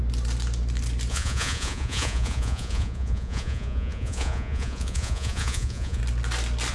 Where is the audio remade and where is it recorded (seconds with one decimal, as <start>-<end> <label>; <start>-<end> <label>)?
0.0-1.1 recorded; 1.1-6.0 remade; 6.0-6.7 recorded

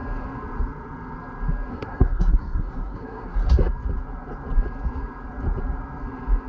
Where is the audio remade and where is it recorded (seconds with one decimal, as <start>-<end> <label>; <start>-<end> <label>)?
0.0-1.7 recorded; 1.7-3.5 remade; 3.5-6.5 recorded

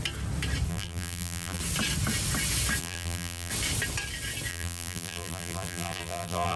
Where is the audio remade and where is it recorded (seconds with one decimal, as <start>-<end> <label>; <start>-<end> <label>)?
0.0-0.7 recorded; 0.7-1.6 remade; 1.6-2.8 recorded; 2.8-3.5 remade; 3.5-4.5 recorded; 4.5-6.6 remade

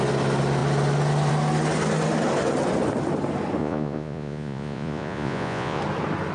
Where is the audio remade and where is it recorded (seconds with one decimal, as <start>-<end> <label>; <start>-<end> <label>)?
0.0-3.6 recorded; 3.6-5.8 remade; 5.8-6.3 recorded